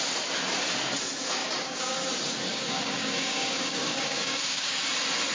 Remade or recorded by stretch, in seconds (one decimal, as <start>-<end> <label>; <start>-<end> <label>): 0.0-1.4 recorded; 1.4-2.1 remade; 2.1-2.5 recorded; 2.5-4.8 remade; 4.8-5.3 recorded